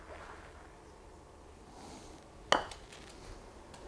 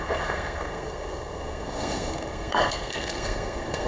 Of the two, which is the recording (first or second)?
first